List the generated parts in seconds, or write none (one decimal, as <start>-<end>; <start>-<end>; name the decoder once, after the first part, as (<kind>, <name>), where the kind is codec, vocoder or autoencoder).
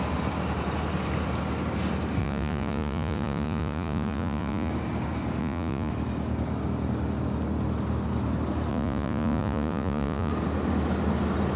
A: 2.2-4.7 (vocoder, Vocos); 5.4-5.9; 8.7-10.3